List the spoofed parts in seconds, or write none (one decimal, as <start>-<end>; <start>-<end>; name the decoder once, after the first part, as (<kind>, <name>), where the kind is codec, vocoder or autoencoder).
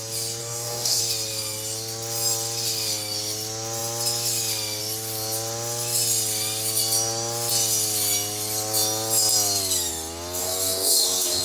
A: 0.4-1.0 (codec, DAC); 10.4-11.4